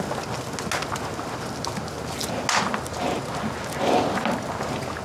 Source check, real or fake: real